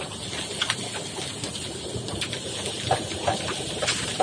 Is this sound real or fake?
real